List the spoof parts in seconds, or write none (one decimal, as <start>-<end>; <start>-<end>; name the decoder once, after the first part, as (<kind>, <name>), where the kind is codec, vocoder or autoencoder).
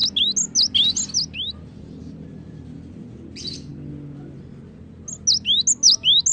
none